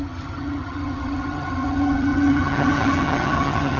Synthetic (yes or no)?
yes